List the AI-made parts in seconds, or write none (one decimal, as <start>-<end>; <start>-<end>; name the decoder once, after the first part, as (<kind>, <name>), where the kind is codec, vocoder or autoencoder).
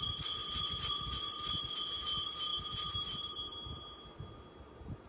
none